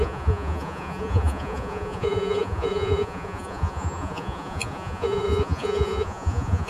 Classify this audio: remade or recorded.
remade